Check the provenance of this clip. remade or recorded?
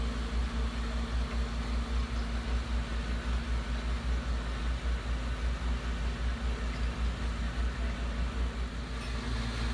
recorded